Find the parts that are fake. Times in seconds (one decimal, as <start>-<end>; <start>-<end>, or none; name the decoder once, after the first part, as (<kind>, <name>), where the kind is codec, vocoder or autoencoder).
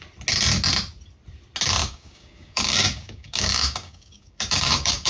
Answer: 1.8-5.1 (codec, DAC)